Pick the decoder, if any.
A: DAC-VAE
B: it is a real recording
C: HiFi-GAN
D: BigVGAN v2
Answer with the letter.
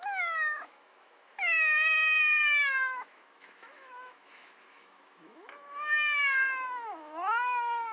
A